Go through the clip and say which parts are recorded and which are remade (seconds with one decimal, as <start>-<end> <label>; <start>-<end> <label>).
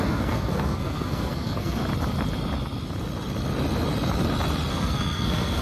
0.0-1.8 remade; 1.8-4.7 recorded; 4.7-5.6 remade